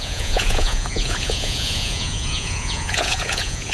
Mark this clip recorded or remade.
remade